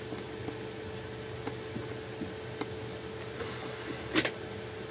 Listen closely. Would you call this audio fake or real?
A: real